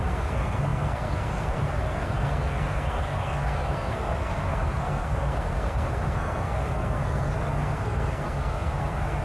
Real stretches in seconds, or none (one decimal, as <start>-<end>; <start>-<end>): none